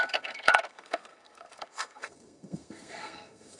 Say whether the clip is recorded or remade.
remade